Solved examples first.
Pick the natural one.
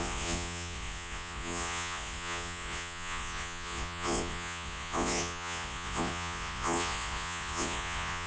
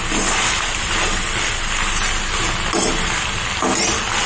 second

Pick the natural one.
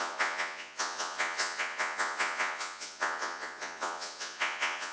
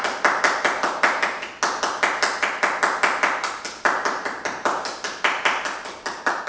second